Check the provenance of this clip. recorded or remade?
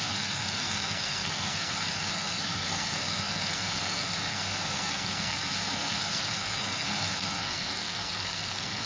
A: remade